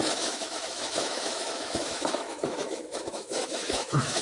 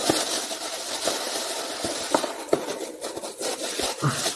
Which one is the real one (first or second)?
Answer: second